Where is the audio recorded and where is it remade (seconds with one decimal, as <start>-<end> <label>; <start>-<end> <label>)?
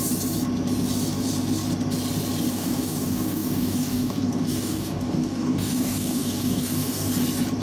0.0-2.5 recorded; 2.5-7.1 remade; 7.1-7.6 recorded